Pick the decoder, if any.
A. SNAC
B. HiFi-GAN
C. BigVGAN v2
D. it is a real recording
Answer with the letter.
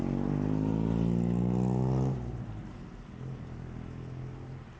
D